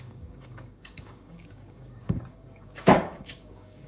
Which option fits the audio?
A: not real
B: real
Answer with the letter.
A